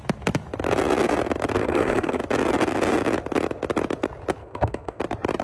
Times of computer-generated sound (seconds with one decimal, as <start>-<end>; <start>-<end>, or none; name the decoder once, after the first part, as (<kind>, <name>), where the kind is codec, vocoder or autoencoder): 1.6-2.2 (codec, SNAC); 4.4-5.0